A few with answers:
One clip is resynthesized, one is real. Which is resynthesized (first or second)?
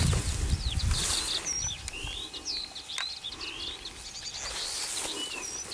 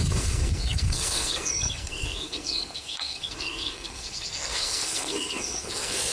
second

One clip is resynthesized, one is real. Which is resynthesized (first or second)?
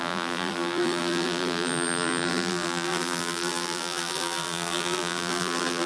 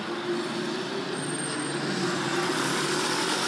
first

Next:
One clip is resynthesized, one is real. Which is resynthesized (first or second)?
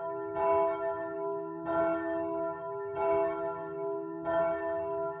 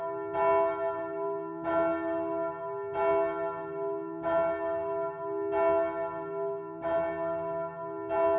first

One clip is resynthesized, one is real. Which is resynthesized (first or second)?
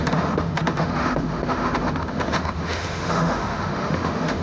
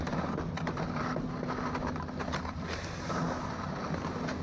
first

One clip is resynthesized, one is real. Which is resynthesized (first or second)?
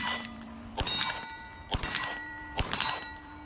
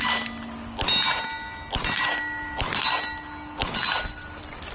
first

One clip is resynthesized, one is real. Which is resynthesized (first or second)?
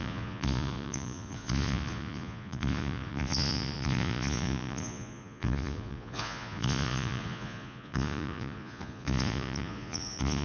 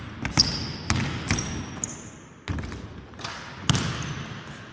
first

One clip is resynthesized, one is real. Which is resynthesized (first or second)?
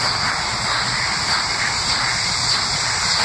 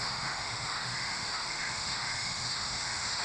second